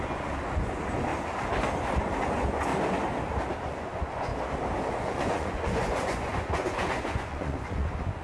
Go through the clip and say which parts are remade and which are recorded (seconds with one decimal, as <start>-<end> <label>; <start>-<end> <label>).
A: 0.0-1.1 remade; 1.1-2.2 recorded; 2.2-2.7 remade; 2.7-3.6 recorded; 3.6-4.3 remade; 4.3-4.9 recorded; 4.9-8.2 remade